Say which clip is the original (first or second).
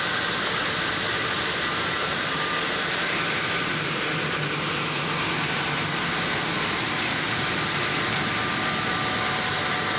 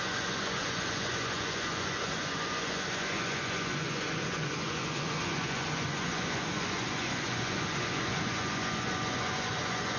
first